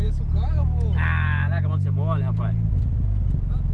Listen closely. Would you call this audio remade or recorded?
recorded